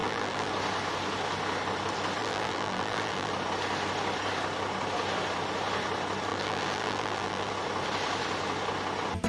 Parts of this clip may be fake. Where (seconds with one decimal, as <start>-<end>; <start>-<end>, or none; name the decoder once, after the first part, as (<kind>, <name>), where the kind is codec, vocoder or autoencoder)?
0.0-0.5 (vocoder, BigVGAN v2); 2.2-3.3; 6.3-7.5